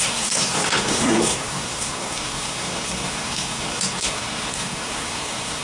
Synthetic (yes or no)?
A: yes